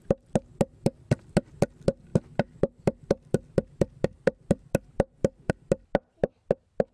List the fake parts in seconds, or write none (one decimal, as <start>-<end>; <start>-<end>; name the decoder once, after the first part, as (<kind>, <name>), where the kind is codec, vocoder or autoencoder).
none